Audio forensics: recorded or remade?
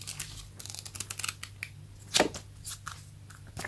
recorded